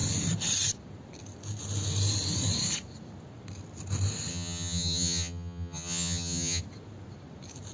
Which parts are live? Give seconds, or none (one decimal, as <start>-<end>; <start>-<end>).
0.0-4.3; 6.6-7.7